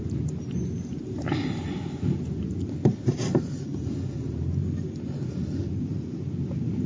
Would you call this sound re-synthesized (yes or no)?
no